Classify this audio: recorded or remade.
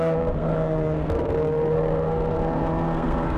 remade